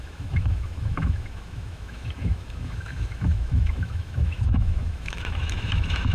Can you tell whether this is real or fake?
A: fake